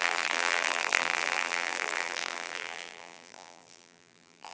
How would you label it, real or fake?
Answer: fake